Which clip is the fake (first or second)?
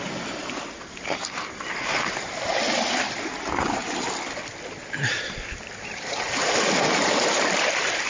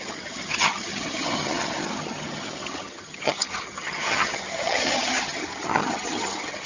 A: second